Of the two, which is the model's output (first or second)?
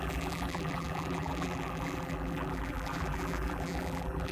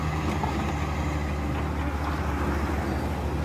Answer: first